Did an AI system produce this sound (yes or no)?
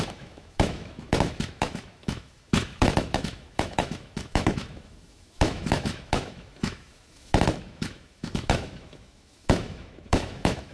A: yes